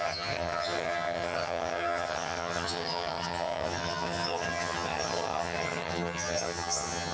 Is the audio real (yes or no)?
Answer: no